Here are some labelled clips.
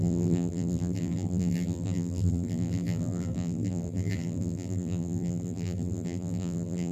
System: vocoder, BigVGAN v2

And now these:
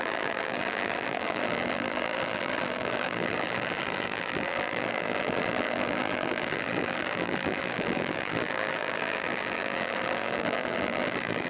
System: vocoder, BigVGAN v2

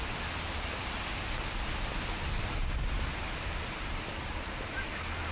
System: none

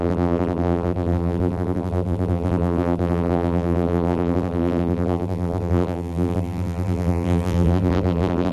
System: vocoder, BigVGAN v2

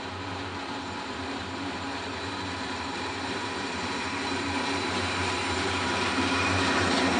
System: vocoder, BigVGAN v2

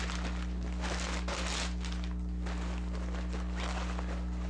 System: none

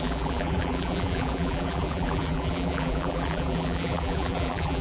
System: vocoder, BigVGAN v2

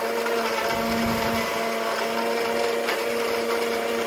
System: none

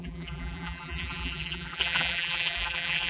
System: vocoder, BigVGAN v2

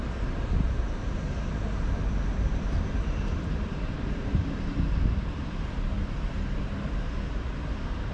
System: vocoder, BigVGAN v2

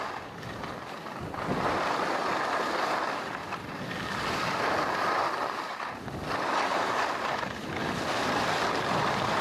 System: vocoder, BigVGAN v2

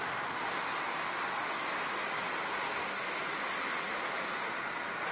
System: none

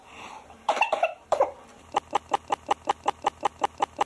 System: vocoder, BigVGAN v2